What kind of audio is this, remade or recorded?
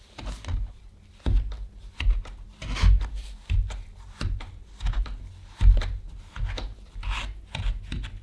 recorded